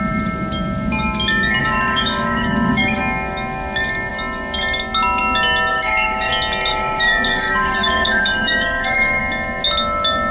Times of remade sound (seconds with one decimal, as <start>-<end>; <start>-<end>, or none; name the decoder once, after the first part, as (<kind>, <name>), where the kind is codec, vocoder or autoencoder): 1.6-3.0 (codec, DAC); 5.7-6.3; 6.7-9.2